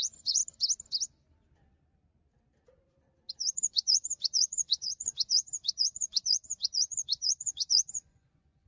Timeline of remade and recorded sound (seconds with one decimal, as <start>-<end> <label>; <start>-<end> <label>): 0.0-0.4 remade; 0.4-3.3 recorded; 3.3-8.7 remade